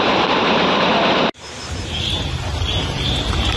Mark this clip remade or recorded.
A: remade